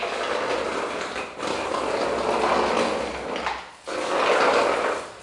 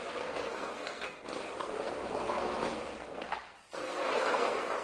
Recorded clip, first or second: first